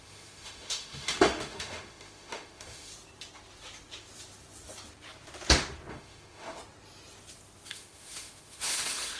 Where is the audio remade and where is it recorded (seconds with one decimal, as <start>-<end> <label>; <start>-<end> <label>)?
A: 0.0-2.9 remade; 2.9-5.9 recorded; 5.9-6.6 remade; 6.6-7.7 recorded; 7.7-9.2 remade